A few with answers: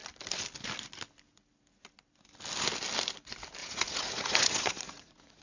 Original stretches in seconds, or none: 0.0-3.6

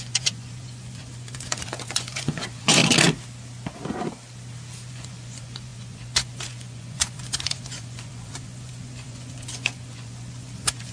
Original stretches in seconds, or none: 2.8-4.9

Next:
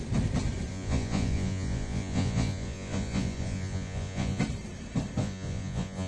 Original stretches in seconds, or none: 0.0-0.7; 4.4-5.2

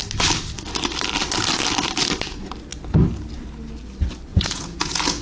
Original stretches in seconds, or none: 0.0-4.3

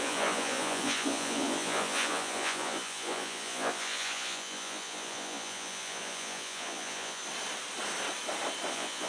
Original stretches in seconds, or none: 7.2-8.7